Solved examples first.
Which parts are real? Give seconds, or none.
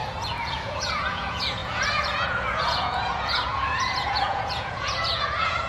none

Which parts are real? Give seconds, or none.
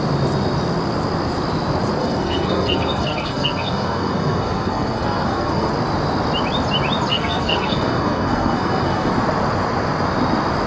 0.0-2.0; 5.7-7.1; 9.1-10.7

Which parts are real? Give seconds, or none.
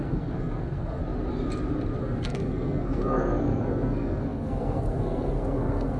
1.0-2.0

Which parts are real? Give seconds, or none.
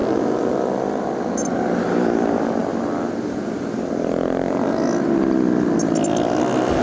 0.0-6.8